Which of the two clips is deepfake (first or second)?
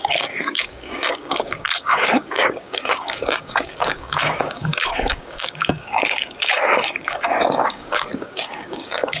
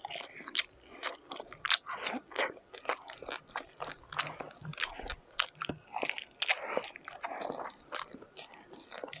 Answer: first